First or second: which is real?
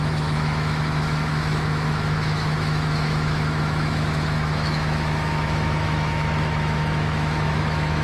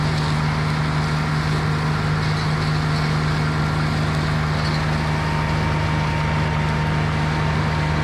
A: second